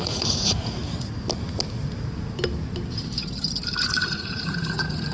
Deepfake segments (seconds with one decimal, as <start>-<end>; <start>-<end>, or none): 0.0-0.8; 3.9-5.1